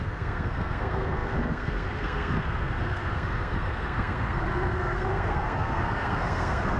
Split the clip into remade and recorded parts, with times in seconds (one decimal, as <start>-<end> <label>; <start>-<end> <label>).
0.0-6.8 remade